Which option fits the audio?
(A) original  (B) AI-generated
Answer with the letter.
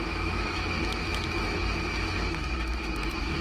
B